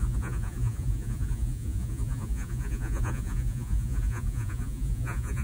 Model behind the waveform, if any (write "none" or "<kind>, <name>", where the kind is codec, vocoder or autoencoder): vocoder, Vocos